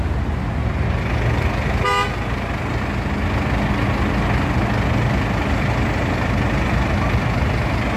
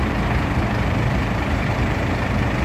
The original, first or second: first